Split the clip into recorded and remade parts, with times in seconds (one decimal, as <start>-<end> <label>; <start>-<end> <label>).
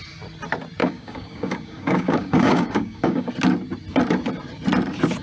0.0-0.8 recorded; 0.8-3.3 remade; 3.3-5.2 recorded